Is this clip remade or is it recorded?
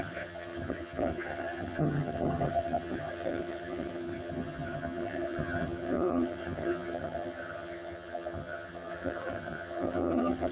remade